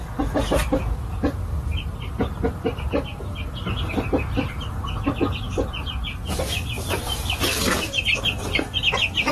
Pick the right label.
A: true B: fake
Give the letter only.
A